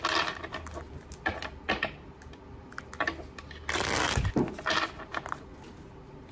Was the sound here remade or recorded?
recorded